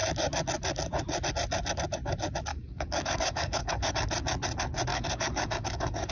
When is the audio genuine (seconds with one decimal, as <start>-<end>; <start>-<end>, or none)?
0.0-2.5; 3.9-4.9